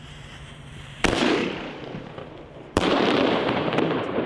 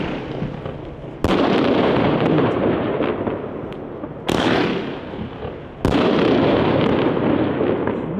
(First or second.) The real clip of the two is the second